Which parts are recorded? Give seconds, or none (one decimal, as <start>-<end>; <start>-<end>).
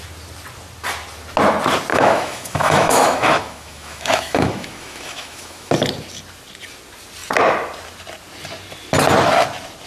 0.0-1.9; 5.7-9.9